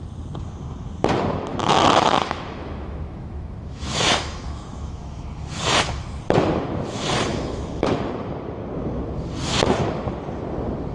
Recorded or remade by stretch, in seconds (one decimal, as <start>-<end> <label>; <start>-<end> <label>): 0.0-1.5 recorded; 1.5-5.6 remade; 5.6-7.3 recorded; 7.3-7.9 remade; 7.9-10.9 recorded